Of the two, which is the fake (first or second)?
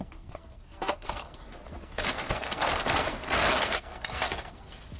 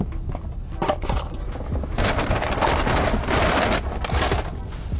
first